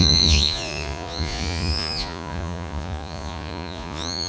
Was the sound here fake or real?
fake